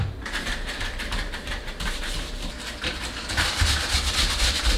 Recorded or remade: remade